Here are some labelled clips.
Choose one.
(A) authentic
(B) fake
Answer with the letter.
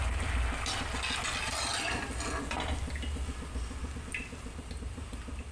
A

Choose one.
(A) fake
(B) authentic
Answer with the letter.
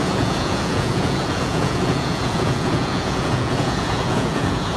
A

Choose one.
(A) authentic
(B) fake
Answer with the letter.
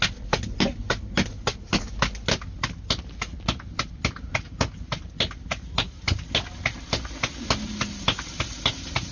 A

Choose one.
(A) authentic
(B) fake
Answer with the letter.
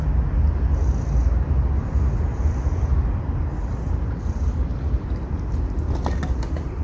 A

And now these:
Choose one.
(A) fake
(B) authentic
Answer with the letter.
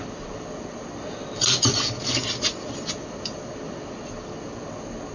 B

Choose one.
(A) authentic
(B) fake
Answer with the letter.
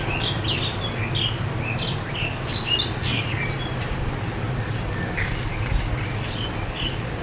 A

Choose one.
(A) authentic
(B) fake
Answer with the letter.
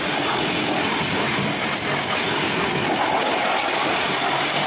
A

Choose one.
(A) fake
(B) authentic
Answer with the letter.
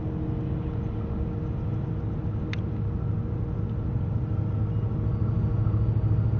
B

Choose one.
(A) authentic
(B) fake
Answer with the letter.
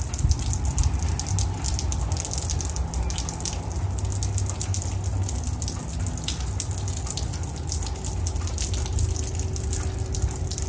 A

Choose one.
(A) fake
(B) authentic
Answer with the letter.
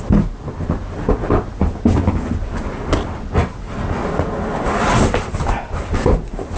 B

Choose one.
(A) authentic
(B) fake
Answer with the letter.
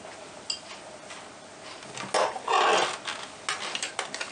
A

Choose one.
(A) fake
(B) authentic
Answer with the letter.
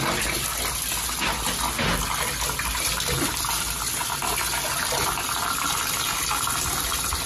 B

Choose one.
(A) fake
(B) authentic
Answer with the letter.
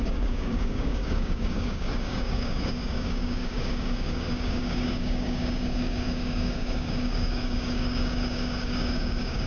A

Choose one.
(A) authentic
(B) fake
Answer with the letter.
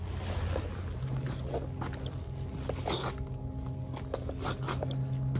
A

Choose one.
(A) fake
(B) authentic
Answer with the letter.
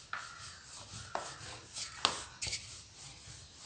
B